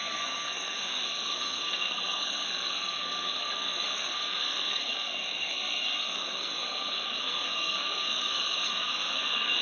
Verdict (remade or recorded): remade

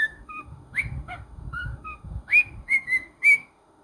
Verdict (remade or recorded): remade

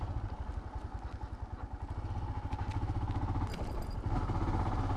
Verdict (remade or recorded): recorded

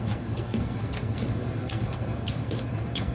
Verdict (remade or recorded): remade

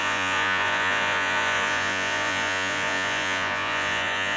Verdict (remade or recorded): remade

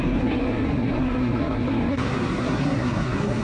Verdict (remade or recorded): remade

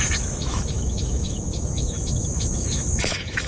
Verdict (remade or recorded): remade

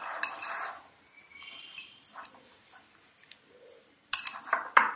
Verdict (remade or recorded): remade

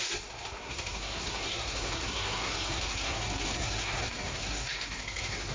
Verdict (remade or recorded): remade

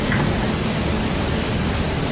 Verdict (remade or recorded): recorded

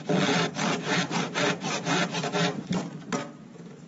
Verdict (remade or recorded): recorded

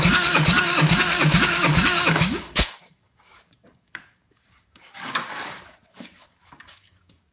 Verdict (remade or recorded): remade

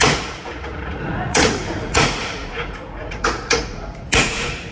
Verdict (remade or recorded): remade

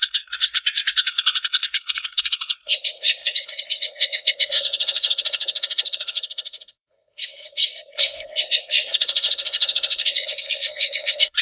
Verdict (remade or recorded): remade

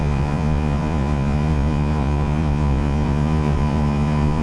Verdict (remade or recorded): remade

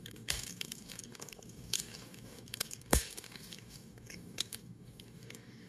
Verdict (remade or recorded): remade